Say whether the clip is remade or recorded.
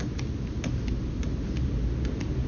recorded